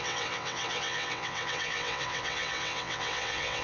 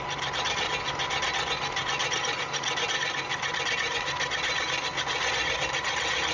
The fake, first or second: first